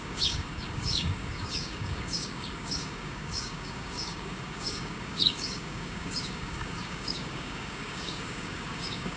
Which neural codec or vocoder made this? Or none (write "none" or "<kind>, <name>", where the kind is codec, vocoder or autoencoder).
codec, DAC